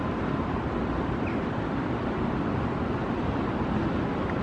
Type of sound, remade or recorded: recorded